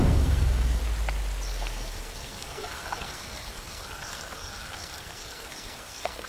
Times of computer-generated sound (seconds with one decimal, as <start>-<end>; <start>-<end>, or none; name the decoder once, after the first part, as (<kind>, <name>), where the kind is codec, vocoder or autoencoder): 0.0-0.8 (codec, SNAC); 1.5-6.3